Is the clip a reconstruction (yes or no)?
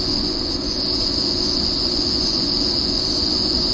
yes